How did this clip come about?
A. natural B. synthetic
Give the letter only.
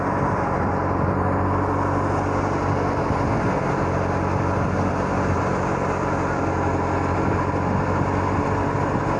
A